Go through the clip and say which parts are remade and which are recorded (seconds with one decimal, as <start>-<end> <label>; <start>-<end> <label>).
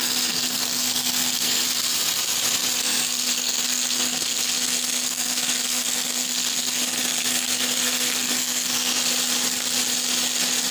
0.0-1.6 remade; 1.6-2.8 recorded; 2.8-8.9 remade; 8.9-10.7 recorded